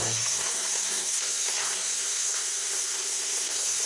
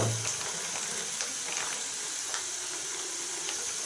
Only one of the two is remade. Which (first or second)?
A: first